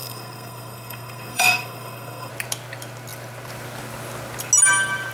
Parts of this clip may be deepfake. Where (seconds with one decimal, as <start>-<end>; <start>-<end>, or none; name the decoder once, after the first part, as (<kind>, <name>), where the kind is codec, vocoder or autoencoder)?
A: 0.0-2.3 (codec, SNAC)